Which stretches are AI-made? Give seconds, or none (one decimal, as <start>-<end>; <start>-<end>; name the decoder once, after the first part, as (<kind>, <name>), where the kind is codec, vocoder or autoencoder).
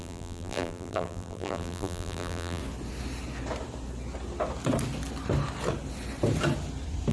0.0-2.6 (vocoder, BigVGAN v2)